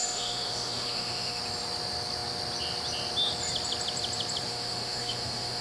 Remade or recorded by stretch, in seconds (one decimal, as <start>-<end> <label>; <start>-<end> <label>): 0.0-1.4 remade; 1.4-4.5 recorded; 4.5-5.6 remade